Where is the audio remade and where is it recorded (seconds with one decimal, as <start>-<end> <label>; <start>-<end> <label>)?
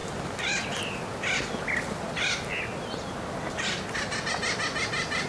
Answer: 0.0-5.3 recorded